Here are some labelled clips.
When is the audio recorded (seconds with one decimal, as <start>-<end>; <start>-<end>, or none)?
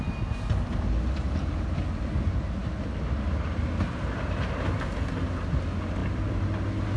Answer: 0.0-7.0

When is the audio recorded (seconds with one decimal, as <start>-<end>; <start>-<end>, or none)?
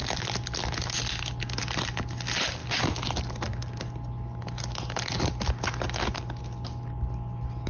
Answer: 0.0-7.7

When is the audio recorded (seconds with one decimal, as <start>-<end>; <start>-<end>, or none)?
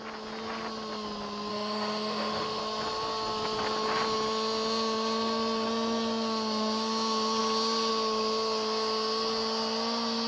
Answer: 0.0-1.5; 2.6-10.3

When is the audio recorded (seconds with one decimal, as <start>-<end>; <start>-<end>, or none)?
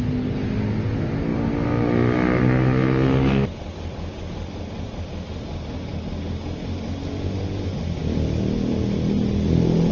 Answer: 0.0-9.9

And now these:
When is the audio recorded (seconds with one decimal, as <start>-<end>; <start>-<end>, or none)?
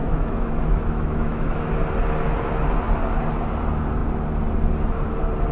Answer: 1.6-5.5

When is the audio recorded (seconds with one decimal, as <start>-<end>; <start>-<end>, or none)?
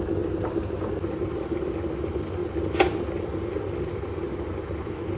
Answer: 0.0-5.2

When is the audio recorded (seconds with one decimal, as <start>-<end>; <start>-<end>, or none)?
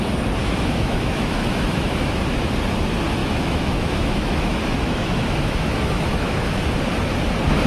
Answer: 0.0-0.4; 2.5-3.2; 6.6-7.7